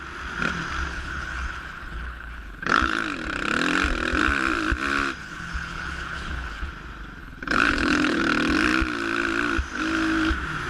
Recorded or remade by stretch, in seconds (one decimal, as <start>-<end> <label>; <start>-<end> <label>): 0.0-0.9 recorded; 0.9-3.0 remade; 3.0-5.2 recorded; 5.2-6.7 remade; 6.7-7.2 recorded; 7.2-8.2 remade; 8.2-10.7 recorded